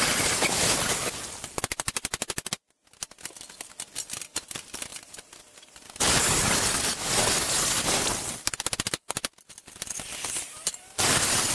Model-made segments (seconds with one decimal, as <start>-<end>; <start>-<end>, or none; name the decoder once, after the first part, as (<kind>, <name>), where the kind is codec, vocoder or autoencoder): 4.9-6.2 (vocoder, BigVGAN v2)